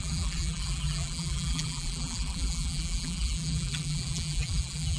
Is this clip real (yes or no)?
no